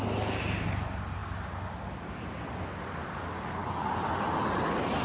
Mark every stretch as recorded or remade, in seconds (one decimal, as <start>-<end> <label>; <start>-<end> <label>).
0.0-5.0 recorded